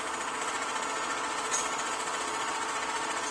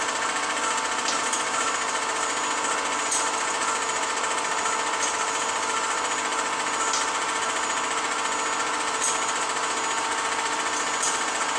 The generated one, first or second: first